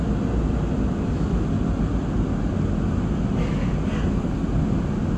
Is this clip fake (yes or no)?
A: no